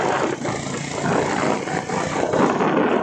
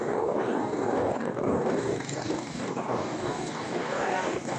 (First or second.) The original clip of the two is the first